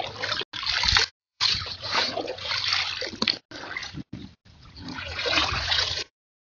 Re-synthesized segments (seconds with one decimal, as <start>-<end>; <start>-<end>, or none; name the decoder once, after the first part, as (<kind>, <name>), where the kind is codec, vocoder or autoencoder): 1.2-2.5 (vocoder, Vocos); 3.8-6.4